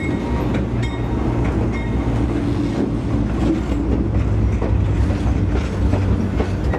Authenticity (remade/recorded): recorded